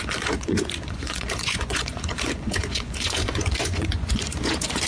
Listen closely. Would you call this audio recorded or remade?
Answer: remade